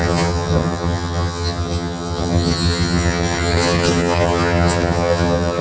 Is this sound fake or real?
fake